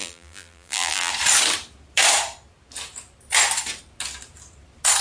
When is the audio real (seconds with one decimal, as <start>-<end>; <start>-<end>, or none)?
1.1-5.0

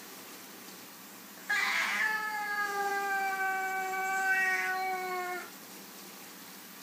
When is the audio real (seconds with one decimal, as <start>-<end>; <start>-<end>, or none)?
0.0-1.4; 2.9-6.8